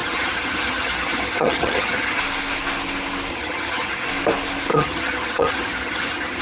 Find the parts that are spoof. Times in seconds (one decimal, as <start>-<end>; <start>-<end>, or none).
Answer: 0.0-2.2; 3.3-4.1; 4.7-6.4